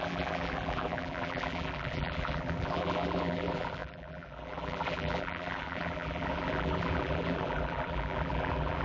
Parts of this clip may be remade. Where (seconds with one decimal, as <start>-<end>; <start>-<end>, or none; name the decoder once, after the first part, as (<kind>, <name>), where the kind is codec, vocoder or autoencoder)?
0.0-8.8 (vocoder, BigVGAN v2)